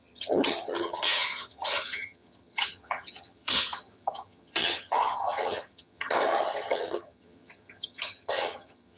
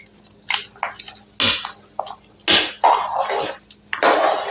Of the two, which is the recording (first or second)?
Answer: second